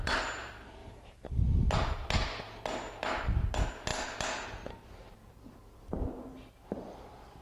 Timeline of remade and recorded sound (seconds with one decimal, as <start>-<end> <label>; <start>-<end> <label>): 0.0-0.8 recorded; 0.8-1.3 remade; 1.3-7.4 recorded